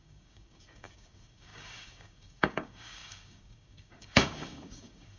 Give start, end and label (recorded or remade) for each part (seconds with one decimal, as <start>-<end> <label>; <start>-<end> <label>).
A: 0.0-5.2 remade